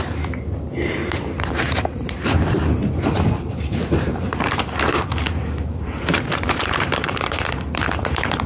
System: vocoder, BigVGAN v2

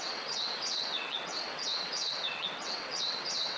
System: vocoder, WaveNeXt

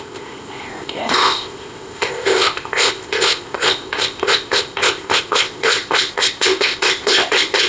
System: codec, ZipCodec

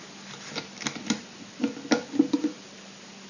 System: none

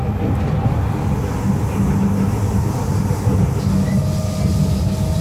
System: none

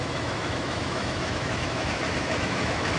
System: autoencoder, DAC-VAE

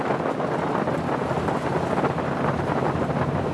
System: none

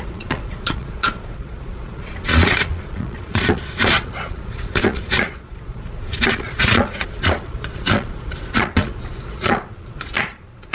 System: vocoder, Vocos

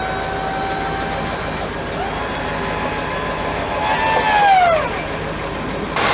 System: none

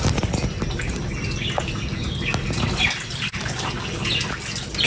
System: none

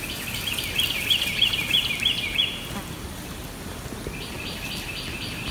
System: none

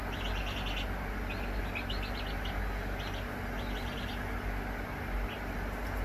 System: none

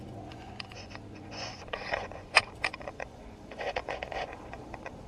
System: vocoder, Vocos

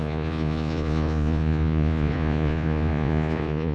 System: vocoder, Vocos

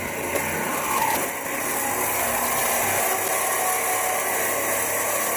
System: none